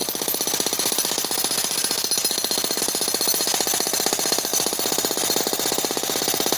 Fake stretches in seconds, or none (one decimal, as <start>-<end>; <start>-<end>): 0.0-2.8